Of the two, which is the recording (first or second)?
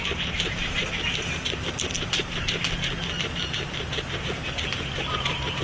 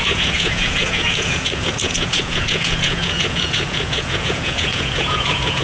first